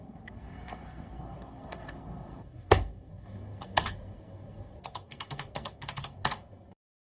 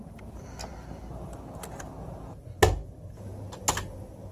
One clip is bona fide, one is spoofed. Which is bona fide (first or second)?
second